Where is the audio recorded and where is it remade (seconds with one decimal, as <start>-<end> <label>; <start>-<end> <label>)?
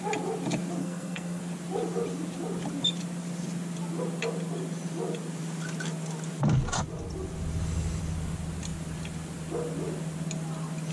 0.0-0.8 recorded; 0.8-1.4 remade; 1.4-10.9 recorded